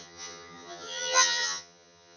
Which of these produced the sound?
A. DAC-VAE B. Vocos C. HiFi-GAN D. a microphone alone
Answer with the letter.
C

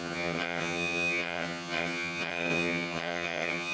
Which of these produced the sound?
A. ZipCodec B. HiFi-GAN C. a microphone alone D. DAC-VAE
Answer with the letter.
B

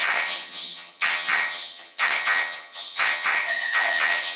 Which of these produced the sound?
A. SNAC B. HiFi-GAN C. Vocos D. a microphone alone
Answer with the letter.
B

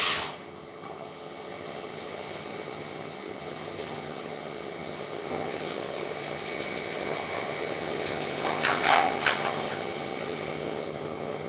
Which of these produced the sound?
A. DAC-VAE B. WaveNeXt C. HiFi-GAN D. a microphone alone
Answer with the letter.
C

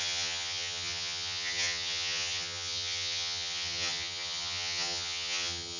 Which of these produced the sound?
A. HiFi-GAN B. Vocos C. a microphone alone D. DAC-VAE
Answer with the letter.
A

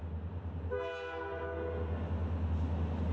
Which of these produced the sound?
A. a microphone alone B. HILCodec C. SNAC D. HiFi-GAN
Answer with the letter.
A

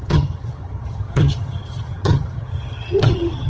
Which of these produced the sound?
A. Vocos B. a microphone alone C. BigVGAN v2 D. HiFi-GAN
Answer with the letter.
D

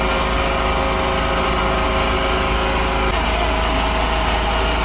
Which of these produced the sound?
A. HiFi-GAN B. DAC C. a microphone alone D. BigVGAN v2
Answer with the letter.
C